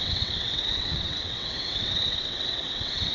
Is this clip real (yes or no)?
no